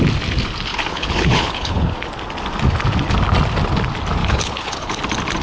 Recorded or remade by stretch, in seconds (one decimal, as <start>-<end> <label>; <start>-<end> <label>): 0.0-0.7 recorded; 0.7-1.9 remade; 1.9-4.2 recorded; 4.2-5.0 remade; 5.0-5.4 recorded